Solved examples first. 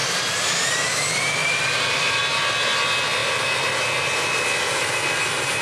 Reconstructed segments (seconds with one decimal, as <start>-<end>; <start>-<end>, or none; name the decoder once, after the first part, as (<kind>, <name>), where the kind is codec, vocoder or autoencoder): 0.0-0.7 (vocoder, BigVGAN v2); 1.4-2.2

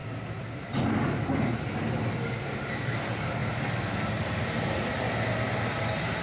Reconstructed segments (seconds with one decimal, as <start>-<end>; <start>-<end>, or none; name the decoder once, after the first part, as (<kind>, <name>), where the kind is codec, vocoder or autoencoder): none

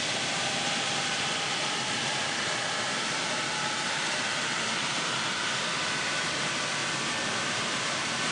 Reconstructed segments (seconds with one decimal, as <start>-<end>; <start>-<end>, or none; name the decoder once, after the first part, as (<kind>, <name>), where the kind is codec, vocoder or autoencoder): 0.0-2.4 (vocoder, BigVGAN v2); 5.8-6.8; 7.4-8.3